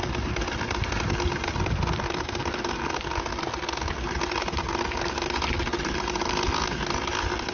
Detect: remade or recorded recorded